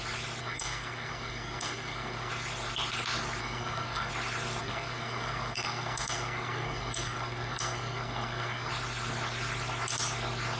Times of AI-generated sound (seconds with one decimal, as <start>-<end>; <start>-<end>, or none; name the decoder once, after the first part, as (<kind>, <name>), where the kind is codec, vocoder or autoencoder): 0.4-2.3 (codec, SNAC); 3.4-4.1; 4.6-8.7